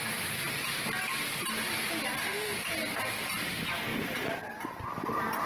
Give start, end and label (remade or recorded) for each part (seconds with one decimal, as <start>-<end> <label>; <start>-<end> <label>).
0.0-2.2 recorded; 2.2-2.7 remade; 2.7-5.5 recorded